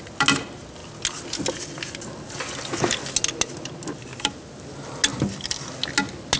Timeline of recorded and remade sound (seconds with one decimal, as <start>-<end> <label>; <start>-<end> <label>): 0.0-6.4 recorded